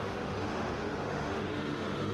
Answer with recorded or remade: remade